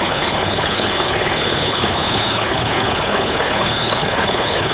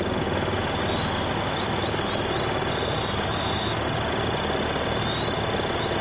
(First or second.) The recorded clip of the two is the second